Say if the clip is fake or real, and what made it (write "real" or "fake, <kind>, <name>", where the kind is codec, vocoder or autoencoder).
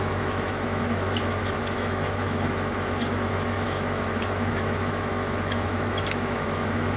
fake, autoencoder, DAC-VAE